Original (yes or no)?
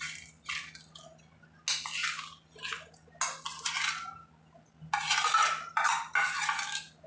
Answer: yes